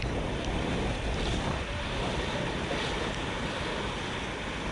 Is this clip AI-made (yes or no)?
no